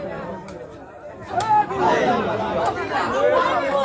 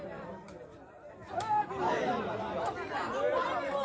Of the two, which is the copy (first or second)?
second